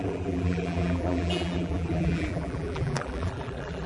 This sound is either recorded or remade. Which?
remade